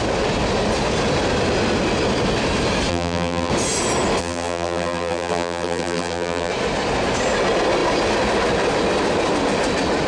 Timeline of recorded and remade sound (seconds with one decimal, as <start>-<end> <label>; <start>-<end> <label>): 0.0-2.9 recorded; 2.9-3.5 remade; 3.5-4.2 recorded; 4.2-6.5 remade; 6.5-10.1 recorded

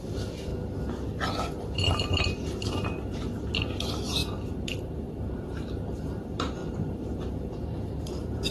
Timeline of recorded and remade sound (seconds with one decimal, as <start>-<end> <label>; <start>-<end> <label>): 0.0-0.5 remade; 0.5-1.6 recorded; 1.6-8.5 remade